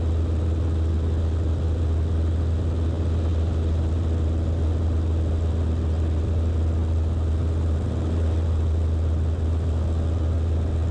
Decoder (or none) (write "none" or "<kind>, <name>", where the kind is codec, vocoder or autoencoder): none